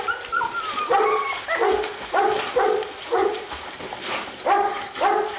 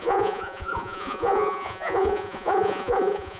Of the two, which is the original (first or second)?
first